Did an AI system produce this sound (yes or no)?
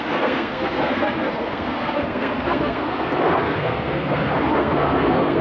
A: yes